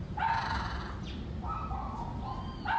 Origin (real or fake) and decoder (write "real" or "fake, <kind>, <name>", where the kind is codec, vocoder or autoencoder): real